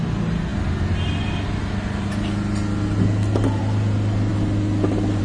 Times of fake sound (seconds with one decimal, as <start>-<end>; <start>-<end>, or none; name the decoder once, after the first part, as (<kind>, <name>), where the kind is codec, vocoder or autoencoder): none